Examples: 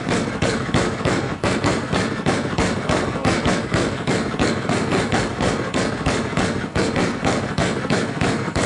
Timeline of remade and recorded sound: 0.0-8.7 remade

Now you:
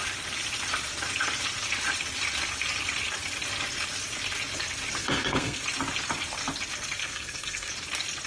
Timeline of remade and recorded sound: 0.0-5.0 recorded; 5.0-5.6 remade; 5.6-7.0 recorded; 7.0-7.7 remade; 7.7-8.3 recorded